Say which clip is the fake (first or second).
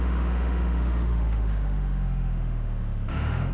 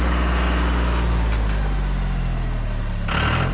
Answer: first